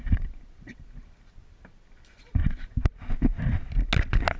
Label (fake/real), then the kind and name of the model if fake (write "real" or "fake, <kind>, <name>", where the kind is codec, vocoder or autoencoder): real